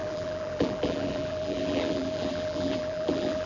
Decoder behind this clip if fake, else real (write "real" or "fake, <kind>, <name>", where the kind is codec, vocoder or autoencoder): fake, vocoder, BigVGAN v2